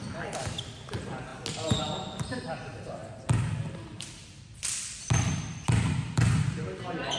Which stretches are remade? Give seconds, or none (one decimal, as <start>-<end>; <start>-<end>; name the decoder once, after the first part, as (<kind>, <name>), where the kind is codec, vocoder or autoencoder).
0.0-1.3 (vocoder, BigVGAN v2); 1.8-7.2